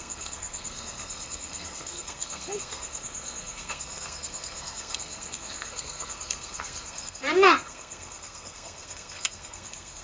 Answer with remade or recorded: remade